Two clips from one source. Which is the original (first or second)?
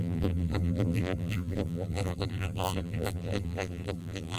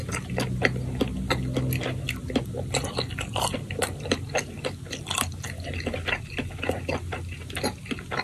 second